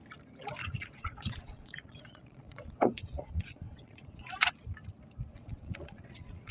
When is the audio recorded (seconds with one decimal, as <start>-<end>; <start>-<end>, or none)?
0.0-0.6; 4.5-5.3